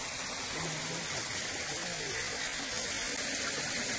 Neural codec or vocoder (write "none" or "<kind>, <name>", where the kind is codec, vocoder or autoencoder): none